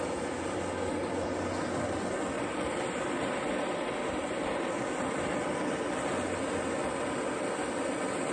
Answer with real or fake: real